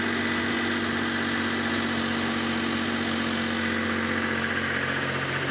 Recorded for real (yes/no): yes